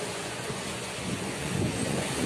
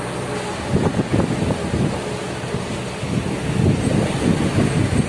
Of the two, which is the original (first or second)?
second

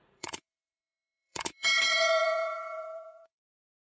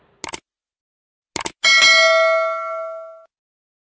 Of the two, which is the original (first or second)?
second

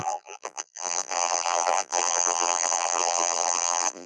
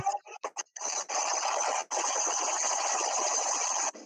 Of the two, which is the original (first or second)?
second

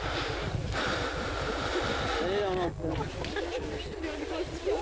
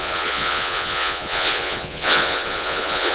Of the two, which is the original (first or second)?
first